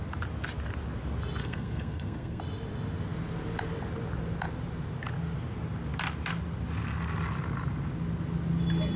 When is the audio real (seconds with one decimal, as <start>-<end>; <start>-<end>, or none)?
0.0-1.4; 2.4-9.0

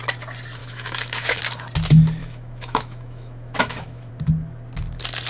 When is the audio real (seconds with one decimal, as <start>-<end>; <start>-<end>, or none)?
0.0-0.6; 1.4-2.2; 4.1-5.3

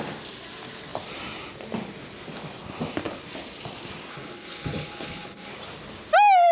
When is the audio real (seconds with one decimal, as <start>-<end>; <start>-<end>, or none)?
0.0-4.1; 5.5-6.5

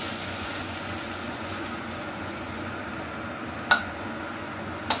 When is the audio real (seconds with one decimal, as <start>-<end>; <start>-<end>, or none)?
2.9-3.8

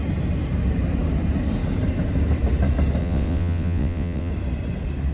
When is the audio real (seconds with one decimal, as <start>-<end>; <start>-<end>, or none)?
0.0-3.0; 4.3-5.1

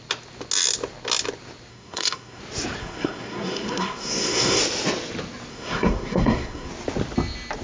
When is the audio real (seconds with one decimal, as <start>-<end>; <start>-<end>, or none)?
0.0-1.7; 2.4-2.8; 4.6-5.5; 6.7-7.6